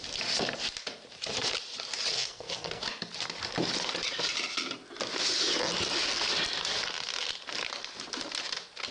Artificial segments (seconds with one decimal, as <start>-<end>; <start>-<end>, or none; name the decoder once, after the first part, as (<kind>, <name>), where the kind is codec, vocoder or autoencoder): 2.1-2.8 (codec, SNAC)